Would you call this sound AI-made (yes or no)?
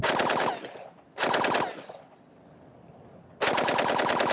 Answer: no